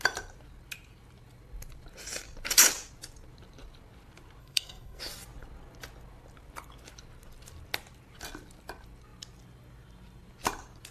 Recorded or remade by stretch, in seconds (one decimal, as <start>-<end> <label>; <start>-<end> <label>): 0.0-4.4 recorded; 4.4-5.0 remade; 5.0-10.9 recorded